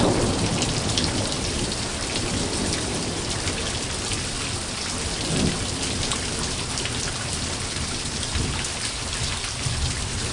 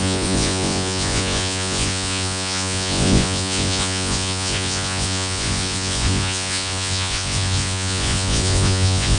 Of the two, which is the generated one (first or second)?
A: second